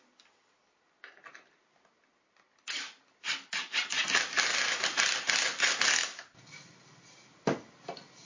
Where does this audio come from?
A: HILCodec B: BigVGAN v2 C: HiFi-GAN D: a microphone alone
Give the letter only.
D